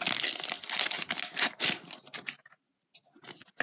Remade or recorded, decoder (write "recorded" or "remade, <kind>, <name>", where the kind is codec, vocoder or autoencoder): recorded